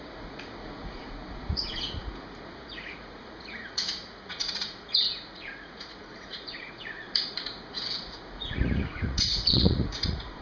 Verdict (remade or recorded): remade